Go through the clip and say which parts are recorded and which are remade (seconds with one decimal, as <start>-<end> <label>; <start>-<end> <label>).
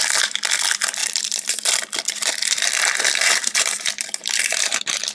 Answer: 0.0-5.1 remade